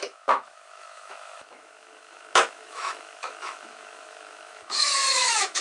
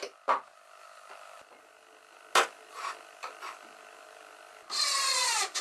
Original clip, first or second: second